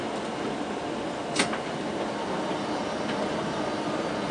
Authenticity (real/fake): real